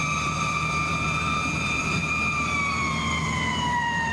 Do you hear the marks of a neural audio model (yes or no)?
yes